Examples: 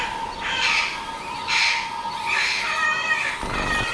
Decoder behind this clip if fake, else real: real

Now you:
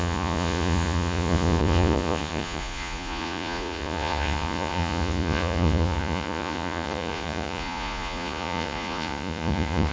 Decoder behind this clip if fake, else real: fake, vocoder, Vocos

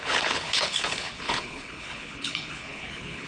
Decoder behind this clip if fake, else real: fake, codec, HILCodec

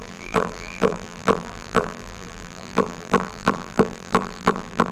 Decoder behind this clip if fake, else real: fake, vocoder, BigVGAN v2